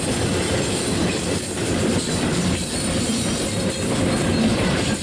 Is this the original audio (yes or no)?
no